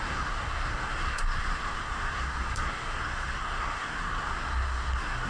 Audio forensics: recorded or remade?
remade